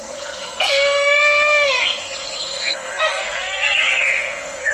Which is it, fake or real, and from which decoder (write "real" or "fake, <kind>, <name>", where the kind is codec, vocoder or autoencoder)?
fake, codec, SNAC